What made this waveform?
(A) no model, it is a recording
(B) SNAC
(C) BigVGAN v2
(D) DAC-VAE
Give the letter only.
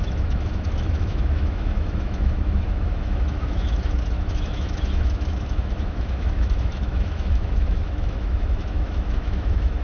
D